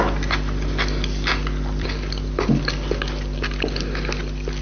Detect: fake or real real